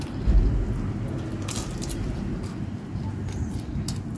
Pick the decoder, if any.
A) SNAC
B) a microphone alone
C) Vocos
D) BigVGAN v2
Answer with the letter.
B